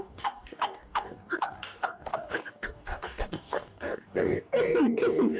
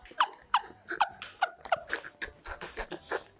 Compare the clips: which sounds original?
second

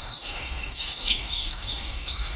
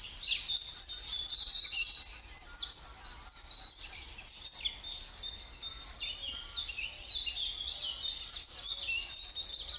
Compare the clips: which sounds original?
second